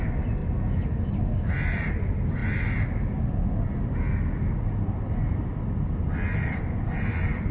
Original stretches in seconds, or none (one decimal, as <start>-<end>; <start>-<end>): 0.0-7.5